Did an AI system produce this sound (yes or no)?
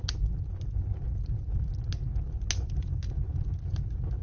no